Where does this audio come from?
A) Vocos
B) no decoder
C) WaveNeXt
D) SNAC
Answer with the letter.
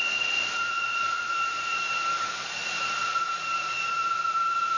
A